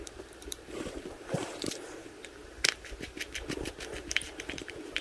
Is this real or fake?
fake